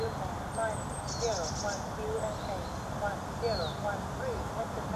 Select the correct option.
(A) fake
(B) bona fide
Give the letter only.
B